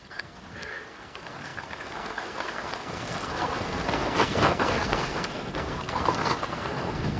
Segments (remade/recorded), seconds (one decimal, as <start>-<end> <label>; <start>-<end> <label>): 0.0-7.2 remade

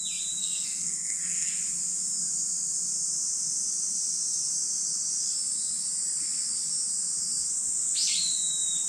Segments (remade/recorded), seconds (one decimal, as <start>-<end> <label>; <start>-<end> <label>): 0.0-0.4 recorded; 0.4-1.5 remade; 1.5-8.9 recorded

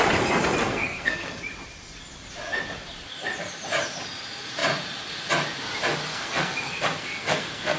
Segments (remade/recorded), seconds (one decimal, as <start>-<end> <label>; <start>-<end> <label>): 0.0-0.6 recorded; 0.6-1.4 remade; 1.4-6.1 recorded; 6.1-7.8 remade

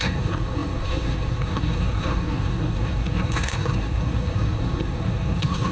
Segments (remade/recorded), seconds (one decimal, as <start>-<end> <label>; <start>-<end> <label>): 0.0-5.7 remade